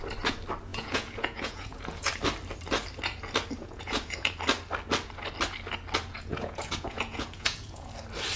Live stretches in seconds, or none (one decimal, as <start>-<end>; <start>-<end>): 0.0-0.7; 2.1-3.6; 4.3-6.1; 7.9-8.4